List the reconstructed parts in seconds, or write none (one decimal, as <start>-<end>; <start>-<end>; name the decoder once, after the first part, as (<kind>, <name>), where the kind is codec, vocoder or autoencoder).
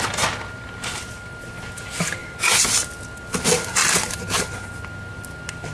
2.2-2.9 (vocoder, BigVGAN v2)